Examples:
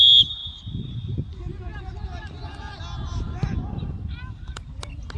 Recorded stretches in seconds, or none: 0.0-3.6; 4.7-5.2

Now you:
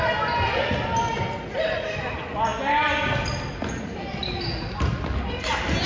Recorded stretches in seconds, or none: 0.0-5.9

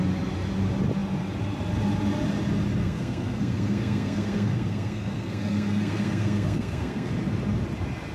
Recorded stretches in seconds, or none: 0.0-2.8; 7.1-8.1

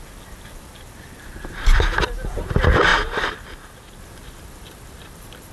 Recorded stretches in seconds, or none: 2.9-4.0

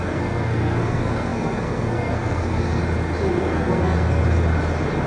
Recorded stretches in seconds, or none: 2.8-3.4; 4.2-5.1

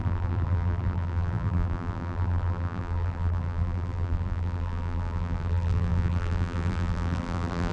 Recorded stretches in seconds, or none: none

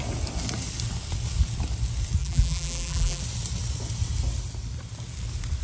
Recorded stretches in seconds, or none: 0.0-2.2; 3.2-5.6

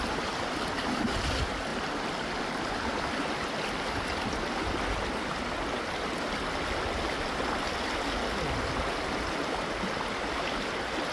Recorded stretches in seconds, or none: 0.0-11.1